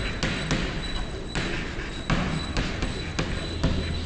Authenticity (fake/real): real